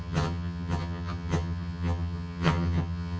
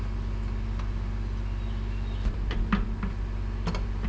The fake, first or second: first